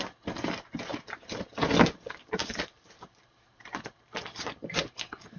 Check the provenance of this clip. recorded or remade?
recorded